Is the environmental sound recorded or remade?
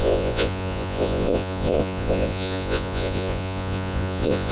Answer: remade